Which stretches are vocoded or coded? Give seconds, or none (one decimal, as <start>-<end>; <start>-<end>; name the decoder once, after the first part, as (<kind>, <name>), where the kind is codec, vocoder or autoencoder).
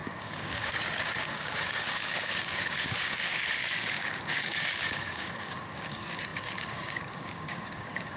0.0-8.2 (codec, DAC)